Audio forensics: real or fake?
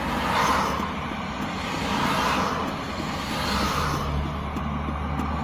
real